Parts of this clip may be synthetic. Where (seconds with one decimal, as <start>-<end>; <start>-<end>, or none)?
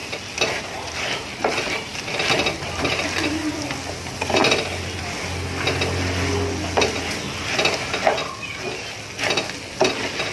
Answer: 0.0-0.6